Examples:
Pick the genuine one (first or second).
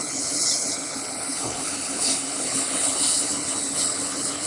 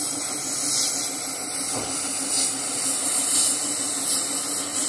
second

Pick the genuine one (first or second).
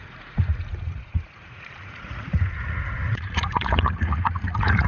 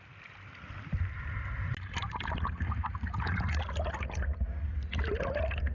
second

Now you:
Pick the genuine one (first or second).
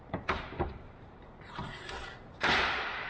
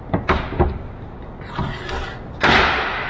second